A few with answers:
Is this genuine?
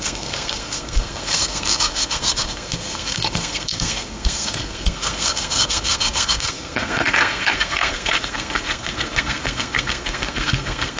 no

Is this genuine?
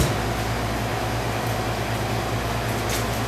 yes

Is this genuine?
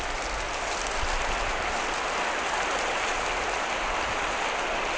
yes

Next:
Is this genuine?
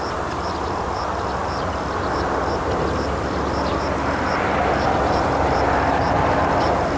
no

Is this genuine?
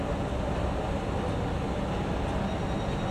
yes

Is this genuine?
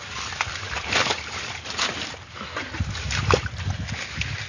no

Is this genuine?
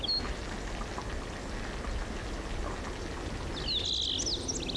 yes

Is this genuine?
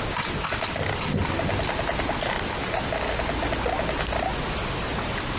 yes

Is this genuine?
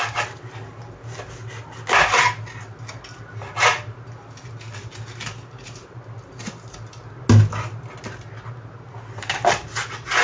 yes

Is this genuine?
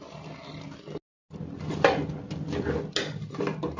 yes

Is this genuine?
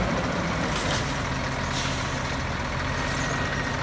yes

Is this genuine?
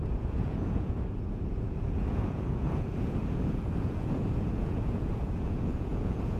no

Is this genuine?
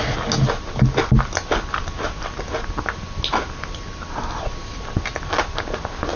yes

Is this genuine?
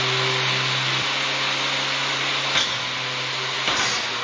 yes